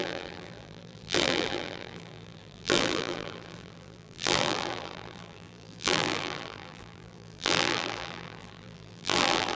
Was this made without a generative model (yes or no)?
no